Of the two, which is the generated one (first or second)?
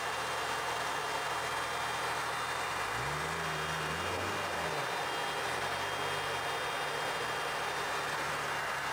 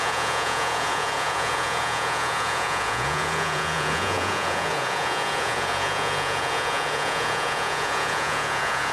second